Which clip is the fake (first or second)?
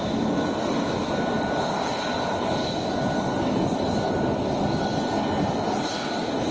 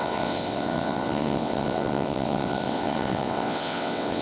second